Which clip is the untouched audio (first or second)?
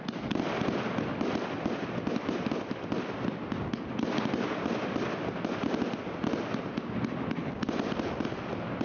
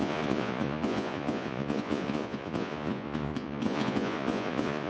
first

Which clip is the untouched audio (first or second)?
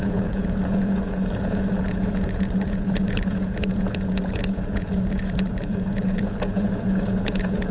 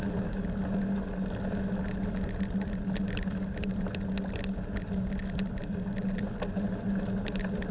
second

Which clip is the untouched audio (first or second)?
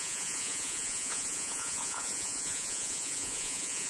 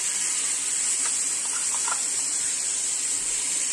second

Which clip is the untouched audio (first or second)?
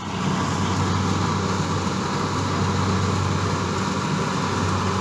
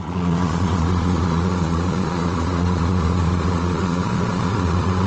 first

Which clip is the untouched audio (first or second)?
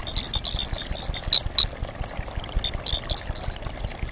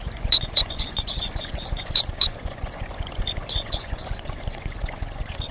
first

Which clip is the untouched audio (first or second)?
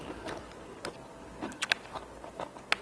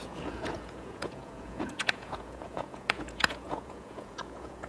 first